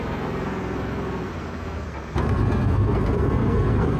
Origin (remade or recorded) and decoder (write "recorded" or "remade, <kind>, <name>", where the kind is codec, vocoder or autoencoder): remade, codec, SNAC